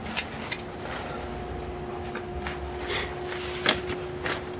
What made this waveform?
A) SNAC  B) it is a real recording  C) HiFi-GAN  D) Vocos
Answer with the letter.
B